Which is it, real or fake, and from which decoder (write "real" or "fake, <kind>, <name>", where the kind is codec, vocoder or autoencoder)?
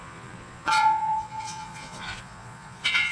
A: fake, vocoder, Vocos